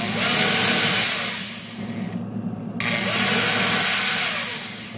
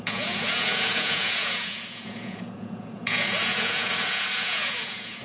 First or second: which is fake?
second